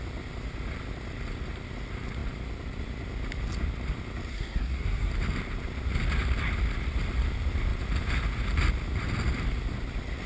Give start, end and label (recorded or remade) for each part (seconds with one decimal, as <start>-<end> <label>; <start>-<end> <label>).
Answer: 0.0-4.3 recorded; 4.3-5.1 remade; 5.1-10.3 recorded